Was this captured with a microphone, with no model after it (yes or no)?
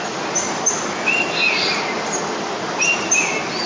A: yes